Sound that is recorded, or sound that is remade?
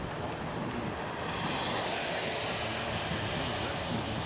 recorded